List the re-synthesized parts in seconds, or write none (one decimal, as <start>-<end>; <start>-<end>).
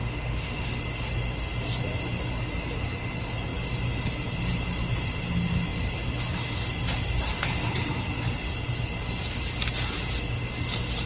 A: 0.0-0.8